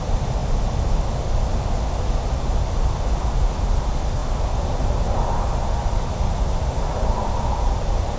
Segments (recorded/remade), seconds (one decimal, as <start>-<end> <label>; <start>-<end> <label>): 0.0-8.2 recorded